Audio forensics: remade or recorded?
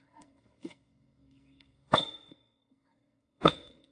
remade